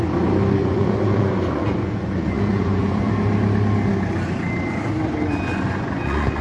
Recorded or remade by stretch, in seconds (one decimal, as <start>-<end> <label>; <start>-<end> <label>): 0.0-0.6 recorded; 0.6-3.1 remade; 3.1-5.5 recorded; 5.5-6.4 remade